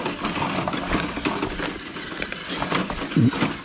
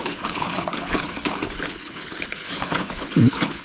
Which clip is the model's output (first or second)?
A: second